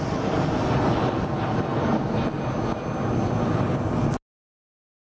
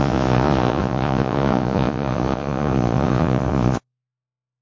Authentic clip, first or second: first